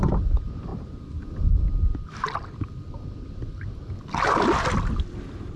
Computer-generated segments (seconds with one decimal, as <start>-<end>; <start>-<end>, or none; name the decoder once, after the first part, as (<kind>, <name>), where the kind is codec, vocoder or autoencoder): 0.7-1.2 (vocoder, BigVGAN v2)